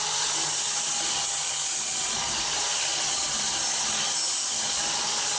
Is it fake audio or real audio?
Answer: real